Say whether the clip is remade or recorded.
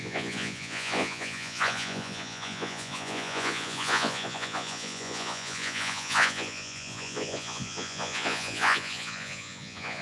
remade